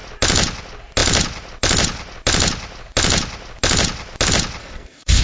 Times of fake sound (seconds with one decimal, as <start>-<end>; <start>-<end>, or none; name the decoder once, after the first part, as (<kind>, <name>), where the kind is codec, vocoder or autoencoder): 4.6-5.2 (codec, SNAC)